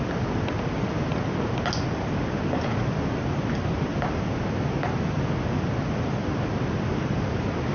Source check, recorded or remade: recorded